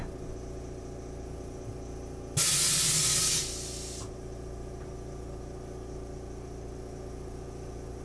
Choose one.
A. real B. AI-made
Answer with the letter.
A